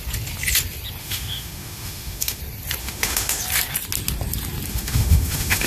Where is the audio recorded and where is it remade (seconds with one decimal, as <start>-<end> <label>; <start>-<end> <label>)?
0.0-1.0 recorded; 1.0-2.4 remade; 2.4-2.8 recorded; 2.8-3.4 remade; 3.4-4.7 recorded; 4.7-5.7 remade